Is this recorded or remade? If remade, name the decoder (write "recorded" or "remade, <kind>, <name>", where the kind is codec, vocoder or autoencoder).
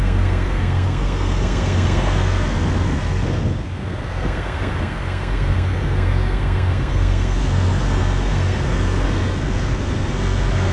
remade, codec, SNAC